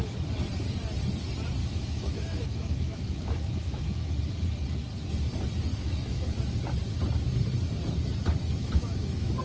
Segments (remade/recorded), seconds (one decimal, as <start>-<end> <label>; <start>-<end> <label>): 0.0-1.6 recorded; 1.6-4.1 remade; 4.1-5.7 recorded; 5.7-6.4 remade; 6.4-8.6 recorded; 8.6-9.4 remade